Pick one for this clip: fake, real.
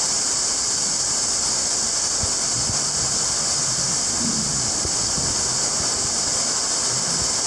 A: real